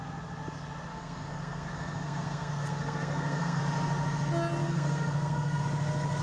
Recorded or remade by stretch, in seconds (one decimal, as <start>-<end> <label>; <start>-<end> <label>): 0.0-0.9 recorded; 0.9-3.6 remade; 3.6-4.6 recorded; 4.6-5.6 remade; 5.6-6.2 recorded